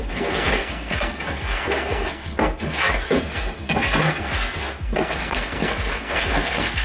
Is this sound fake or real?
fake